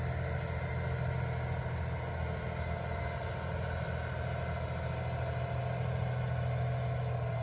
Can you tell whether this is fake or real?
real